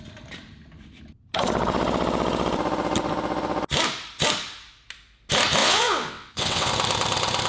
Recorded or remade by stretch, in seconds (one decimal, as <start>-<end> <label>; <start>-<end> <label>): 0.0-5.6 recorded; 5.6-6.7 remade; 6.7-7.5 recorded